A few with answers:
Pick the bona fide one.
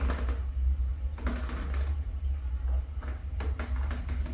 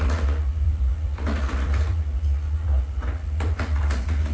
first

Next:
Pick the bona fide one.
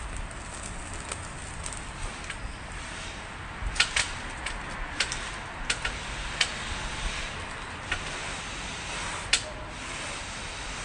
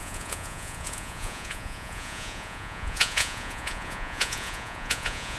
first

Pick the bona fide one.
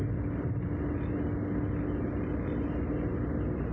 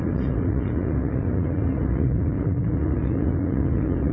first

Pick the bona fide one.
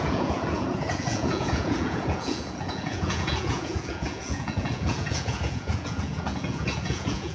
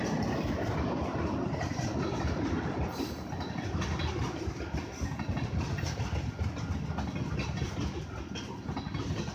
second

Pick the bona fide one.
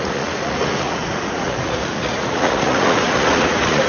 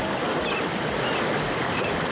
second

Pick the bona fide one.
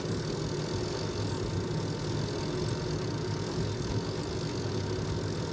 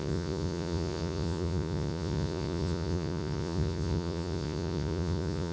first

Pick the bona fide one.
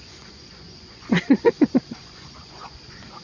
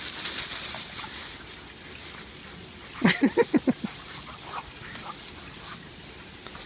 second